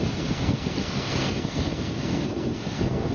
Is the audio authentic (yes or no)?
no